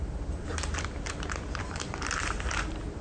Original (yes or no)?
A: no